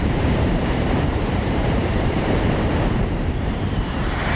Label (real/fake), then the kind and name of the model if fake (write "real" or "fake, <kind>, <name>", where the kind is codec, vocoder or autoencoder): fake, vocoder, BigVGAN v2